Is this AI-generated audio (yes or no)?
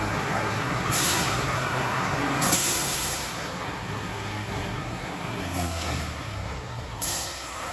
yes